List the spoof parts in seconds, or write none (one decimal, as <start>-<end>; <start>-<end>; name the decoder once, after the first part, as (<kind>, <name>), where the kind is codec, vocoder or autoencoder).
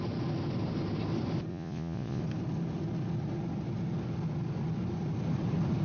1.5-2.2 (vocoder, Vocos)